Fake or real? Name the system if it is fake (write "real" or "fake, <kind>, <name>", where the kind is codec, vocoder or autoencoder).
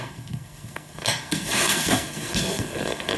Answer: fake, codec, SNAC